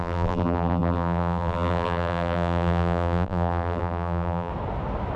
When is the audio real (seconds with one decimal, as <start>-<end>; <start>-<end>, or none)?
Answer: 4.5-5.2